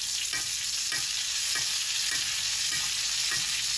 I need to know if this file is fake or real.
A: real